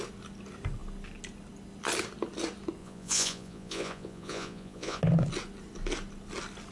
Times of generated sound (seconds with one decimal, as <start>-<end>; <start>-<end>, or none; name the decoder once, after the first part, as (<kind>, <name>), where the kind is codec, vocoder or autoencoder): 2.8-5.0 (vocoder, Vocos)